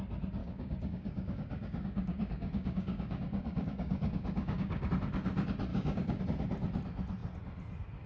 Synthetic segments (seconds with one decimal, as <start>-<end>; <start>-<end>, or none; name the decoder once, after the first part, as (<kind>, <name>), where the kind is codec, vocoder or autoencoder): 0.4-4.9 (codec, DAC); 5.7-6.2